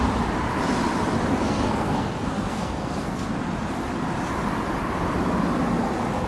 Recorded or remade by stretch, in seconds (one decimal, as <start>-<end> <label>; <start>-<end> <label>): 0.0-1.3 recorded; 1.3-3.3 remade; 3.3-6.3 recorded